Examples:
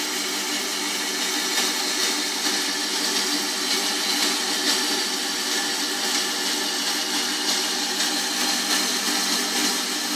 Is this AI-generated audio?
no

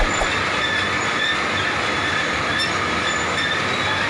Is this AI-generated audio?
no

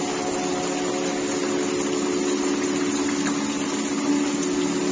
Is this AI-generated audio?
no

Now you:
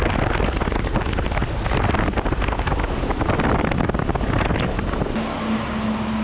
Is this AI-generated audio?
no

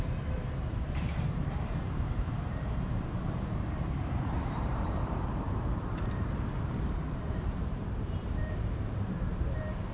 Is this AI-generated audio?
yes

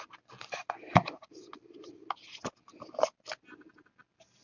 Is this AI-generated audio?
no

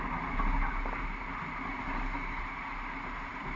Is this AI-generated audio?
no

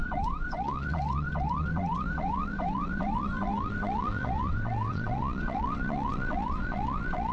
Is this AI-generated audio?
yes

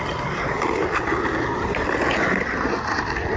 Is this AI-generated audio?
no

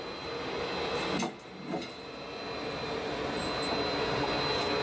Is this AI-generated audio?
no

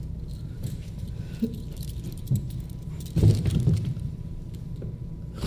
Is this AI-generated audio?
yes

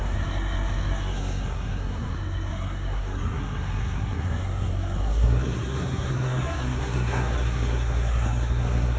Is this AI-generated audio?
yes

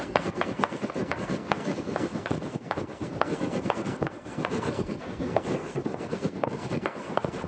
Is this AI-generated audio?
yes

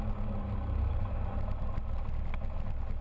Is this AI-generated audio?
no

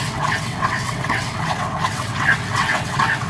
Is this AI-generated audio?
yes